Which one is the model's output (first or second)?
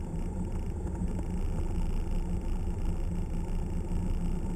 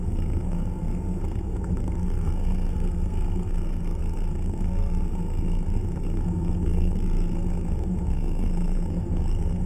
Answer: second